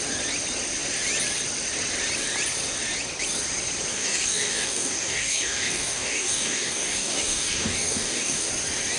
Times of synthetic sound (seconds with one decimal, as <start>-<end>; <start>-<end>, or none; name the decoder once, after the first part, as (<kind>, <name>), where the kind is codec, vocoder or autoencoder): 3.9-8.5 (codec, DAC)